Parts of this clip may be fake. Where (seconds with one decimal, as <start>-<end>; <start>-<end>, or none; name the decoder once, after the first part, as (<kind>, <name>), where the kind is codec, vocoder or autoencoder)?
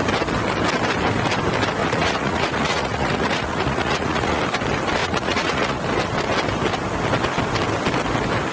1.8-4.4 (vocoder, Vocos); 5.0-5.8